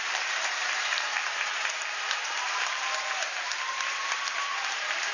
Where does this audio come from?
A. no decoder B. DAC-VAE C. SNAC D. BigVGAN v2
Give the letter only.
D